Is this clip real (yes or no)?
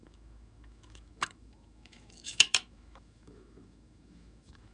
no